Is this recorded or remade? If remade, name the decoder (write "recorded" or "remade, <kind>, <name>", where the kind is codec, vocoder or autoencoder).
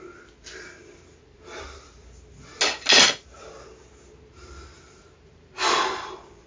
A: recorded